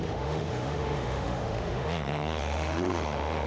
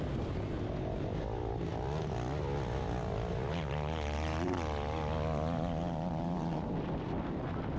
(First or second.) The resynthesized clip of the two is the first